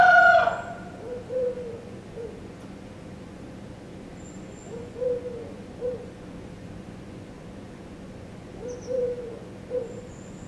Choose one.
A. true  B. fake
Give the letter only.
B